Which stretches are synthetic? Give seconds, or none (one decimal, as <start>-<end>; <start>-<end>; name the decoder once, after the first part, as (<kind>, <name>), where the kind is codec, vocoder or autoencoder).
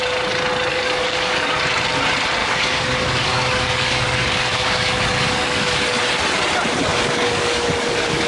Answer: 0.7-1.6 (codec, DAC); 2.4-6.0; 6.9-8.3